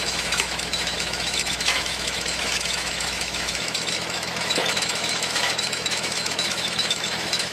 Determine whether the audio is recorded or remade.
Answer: remade